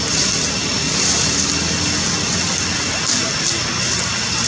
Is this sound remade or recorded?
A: recorded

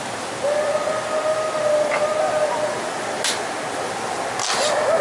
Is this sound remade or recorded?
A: recorded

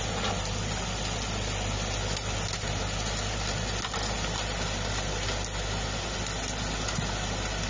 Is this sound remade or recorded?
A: recorded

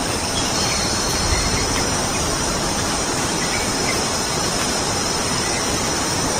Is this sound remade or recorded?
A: remade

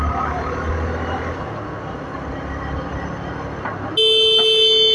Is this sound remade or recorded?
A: recorded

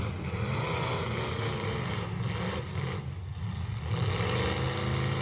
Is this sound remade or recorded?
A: recorded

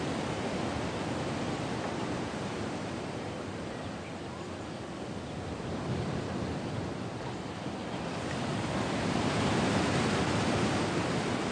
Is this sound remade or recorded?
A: remade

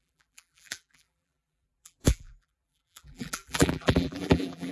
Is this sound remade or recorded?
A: remade